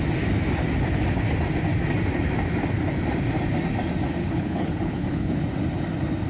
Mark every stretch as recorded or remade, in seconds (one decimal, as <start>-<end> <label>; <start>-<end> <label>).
0.0-4.2 recorded; 4.2-5.4 remade; 5.4-6.3 recorded